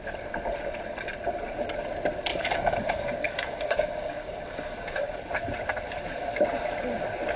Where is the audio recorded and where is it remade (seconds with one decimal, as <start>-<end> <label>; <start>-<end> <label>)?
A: 0.0-2.3 recorded; 2.3-5.2 remade; 5.2-7.4 recorded